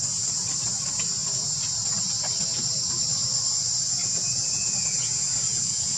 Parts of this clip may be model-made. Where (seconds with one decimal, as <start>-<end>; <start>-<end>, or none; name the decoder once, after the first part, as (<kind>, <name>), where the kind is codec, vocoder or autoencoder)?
4.0-6.0 (vocoder, Vocos)